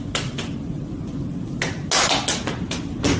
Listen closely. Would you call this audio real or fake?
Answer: real